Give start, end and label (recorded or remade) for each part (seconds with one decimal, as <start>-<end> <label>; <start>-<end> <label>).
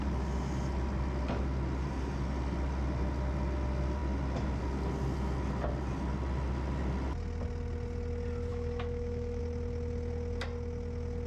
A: 0.0-8.5 recorded; 8.5-9.4 remade; 9.4-11.3 recorded